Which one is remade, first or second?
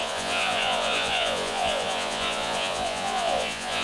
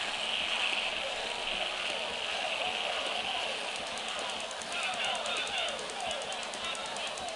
first